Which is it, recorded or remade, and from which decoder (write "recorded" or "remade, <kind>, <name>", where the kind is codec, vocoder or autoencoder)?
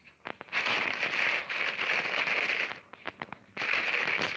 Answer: recorded